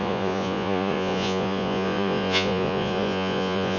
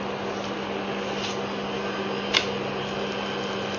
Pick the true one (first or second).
second